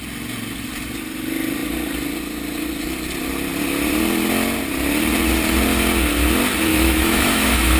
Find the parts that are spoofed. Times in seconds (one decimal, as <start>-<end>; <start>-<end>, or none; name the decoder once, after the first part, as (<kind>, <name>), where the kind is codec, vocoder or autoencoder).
6.7-7.8 (autoencoder, DAC-VAE)